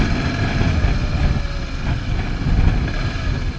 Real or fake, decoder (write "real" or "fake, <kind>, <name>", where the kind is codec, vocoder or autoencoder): real